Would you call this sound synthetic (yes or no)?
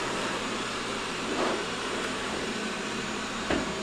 yes